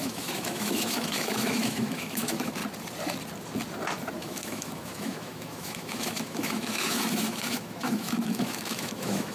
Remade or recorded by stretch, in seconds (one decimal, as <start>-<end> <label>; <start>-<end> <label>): 0.0-2.6 remade; 2.6-4.2 recorded; 4.2-9.3 remade